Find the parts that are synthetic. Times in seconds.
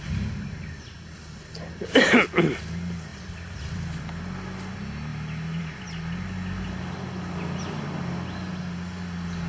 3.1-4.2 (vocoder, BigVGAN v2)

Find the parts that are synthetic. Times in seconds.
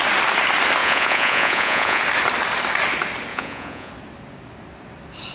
0.8-2.0 (vocoder, Vocos); 3.3-3.9